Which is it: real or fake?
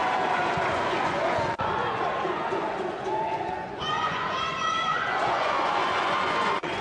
fake